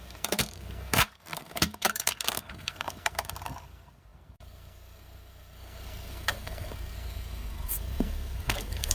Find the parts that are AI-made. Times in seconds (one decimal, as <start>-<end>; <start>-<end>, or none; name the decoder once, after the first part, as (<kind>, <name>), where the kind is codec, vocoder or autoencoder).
0.0-8.9 (codec, SNAC)